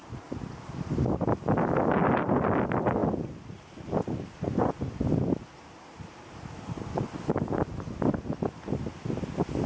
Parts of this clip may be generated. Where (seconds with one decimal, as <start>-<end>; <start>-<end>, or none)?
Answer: none

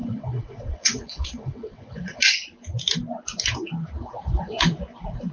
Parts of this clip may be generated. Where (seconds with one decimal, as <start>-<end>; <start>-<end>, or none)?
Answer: 0.0-2.2

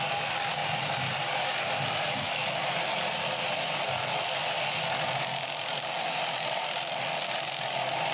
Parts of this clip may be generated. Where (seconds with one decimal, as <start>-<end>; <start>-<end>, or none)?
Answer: none

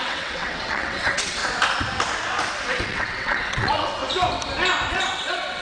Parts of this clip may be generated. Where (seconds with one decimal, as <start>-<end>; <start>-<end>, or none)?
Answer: 0.0-1.4; 2.7-4.0; 4.9-5.6

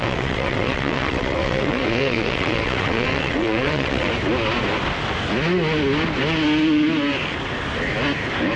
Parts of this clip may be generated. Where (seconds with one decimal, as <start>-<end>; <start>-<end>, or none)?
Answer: 0.0-4.1

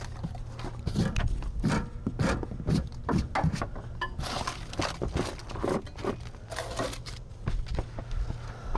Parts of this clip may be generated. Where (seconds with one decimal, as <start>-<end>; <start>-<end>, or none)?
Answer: none